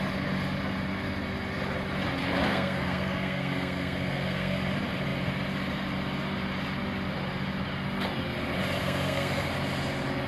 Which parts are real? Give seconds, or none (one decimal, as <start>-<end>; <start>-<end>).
0.0-2.5; 4.6-8.8; 9.5-10.3